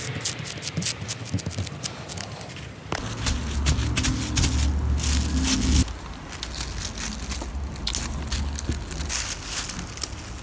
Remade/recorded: recorded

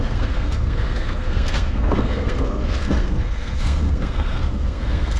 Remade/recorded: remade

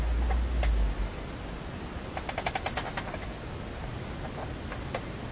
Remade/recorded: recorded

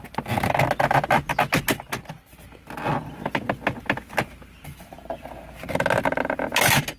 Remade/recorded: recorded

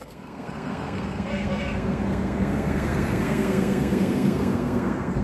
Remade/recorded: remade